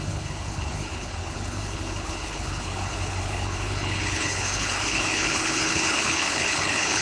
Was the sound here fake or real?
fake